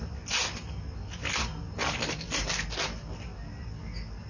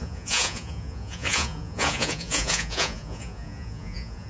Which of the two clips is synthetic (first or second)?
second